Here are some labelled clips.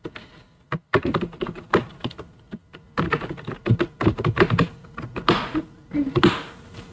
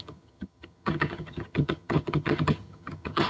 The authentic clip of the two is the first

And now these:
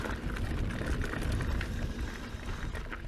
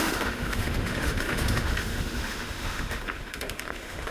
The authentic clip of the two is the first